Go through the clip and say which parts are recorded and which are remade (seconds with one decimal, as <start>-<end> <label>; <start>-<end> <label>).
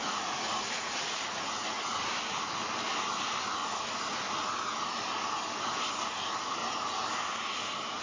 0.0-2.0 remade; 2.0-3.6 recorded; 3.6-4.2 remade; 4.2-8.0 recorded